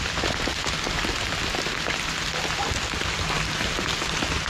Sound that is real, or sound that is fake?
real